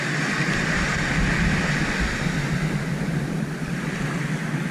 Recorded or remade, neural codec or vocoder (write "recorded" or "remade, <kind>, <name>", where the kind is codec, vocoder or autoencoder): recorded